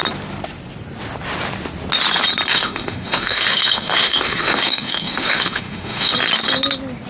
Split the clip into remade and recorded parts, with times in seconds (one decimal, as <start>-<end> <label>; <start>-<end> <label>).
0.0-2.5 recorded; 2.5-6.1 remade; 6.1-7.1 recorded